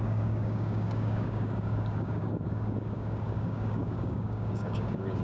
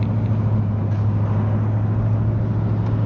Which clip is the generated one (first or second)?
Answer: first